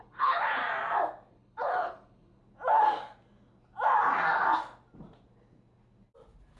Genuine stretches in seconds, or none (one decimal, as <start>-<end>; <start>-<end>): 0.6-1.3; 2.4-6.6